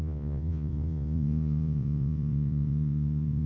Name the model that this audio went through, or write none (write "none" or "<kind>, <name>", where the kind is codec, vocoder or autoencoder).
vocoder, Vocos